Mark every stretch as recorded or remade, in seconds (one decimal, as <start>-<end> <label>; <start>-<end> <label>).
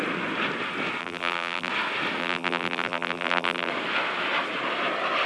0.0-1.0 recorded; 1.0-1.7 remade; 1.7-2.2 recorded; 2.2-3.7 remade; 3.7-5.3 recorded